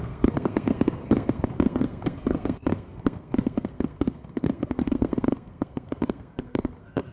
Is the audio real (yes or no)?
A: no